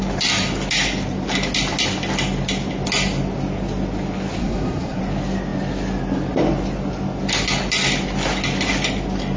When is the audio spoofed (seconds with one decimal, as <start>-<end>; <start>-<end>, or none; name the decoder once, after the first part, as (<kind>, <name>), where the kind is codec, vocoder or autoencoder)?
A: 4.4-5.0 (codec, SNAC)